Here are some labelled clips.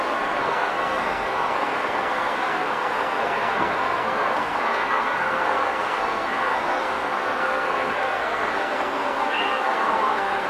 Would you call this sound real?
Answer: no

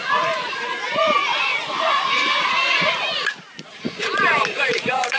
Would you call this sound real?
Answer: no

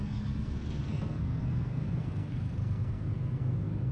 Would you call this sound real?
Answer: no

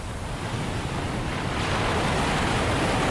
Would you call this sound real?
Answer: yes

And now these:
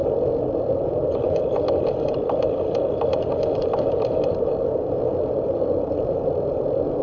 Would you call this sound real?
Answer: no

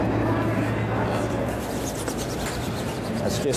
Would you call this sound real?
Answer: yes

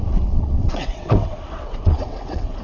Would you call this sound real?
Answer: no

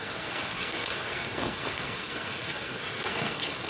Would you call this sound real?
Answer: no